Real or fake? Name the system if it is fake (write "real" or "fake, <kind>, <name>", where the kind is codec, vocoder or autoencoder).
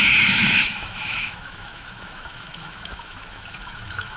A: fake, autoencoder, DAC-VAE